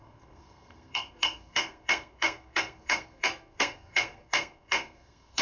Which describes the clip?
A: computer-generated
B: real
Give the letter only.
A